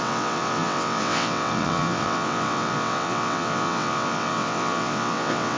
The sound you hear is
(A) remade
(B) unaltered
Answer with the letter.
A